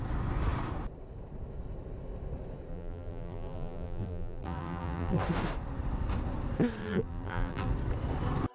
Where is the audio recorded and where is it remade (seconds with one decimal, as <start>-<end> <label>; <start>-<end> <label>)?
0.0-2.7 recorded; 2.7-5.2 remade; 5.2-6.8 recorded; 6.8-7.7 remade; 7.7-8.5 recorded